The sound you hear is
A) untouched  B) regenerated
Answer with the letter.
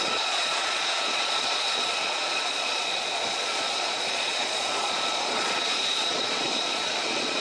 B